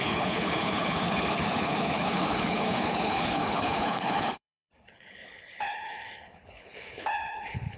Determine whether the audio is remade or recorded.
remade